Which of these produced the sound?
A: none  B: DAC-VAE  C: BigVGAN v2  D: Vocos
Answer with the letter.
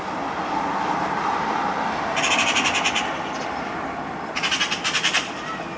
A